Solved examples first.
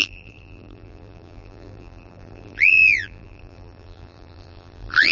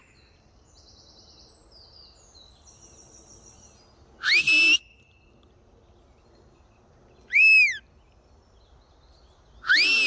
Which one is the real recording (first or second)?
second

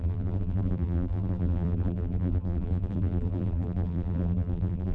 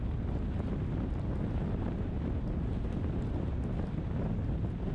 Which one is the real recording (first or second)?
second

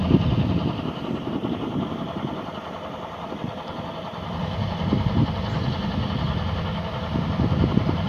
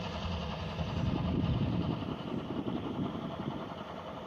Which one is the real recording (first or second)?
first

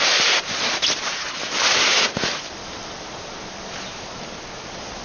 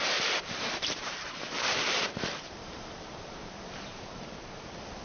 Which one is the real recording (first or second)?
first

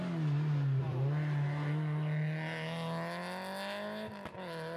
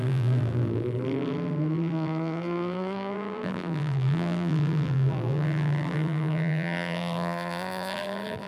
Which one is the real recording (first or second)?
first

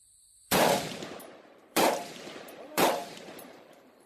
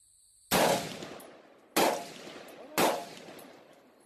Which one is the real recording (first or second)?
second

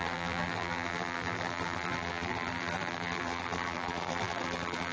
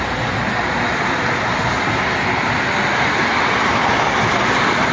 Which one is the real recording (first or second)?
second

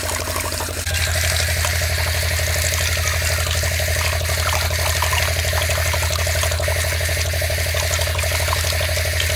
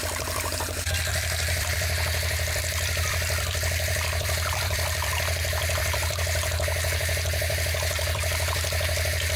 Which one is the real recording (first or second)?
first